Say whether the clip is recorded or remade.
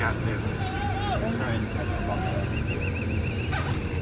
recorded